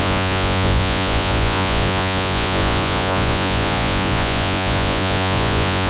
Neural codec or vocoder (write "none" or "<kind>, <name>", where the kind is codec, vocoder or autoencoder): vocoder, Vocos